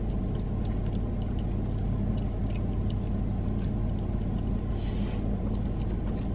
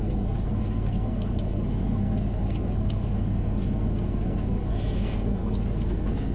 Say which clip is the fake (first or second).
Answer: second